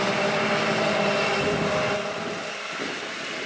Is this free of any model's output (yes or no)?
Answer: yes